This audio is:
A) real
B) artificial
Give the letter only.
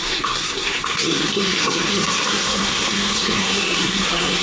B